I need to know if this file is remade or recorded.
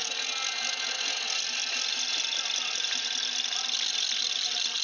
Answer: recorded